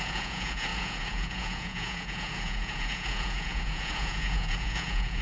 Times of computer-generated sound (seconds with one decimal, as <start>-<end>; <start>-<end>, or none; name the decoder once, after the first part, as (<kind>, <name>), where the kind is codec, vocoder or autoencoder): 0.0-5.2 (vocoder, Vocos)